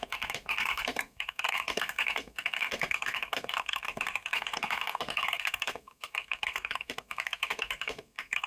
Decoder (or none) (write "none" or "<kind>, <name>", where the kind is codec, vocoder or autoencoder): codec, SNAC